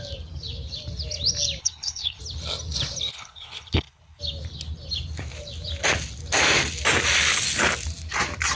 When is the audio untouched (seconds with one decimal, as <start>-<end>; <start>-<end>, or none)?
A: 0.0-1.6; 2.2-3.1; 4.2-8.6